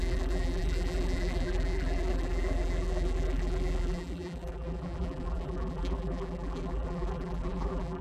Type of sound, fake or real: fake